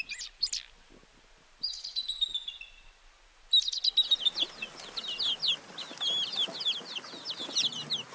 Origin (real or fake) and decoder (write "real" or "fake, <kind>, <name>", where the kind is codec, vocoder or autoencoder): real